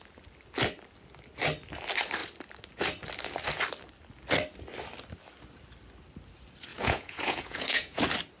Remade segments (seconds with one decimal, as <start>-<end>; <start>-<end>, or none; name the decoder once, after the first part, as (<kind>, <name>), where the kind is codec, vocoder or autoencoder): 6.7-8.0 (vocoder, Vocos)